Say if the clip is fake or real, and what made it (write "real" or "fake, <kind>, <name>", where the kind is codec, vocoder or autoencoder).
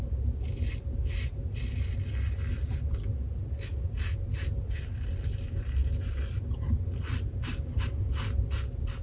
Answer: real